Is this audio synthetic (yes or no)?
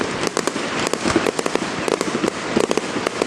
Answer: no